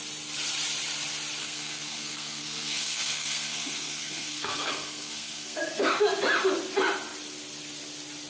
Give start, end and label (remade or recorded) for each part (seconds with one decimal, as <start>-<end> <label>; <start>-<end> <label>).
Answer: 0.0-1.4 recorded; 1.4-5.9 remade; 5.9-8.3 recorded